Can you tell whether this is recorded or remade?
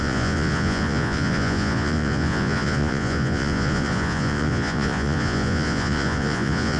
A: remade